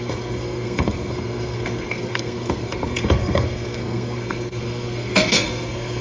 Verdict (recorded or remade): remade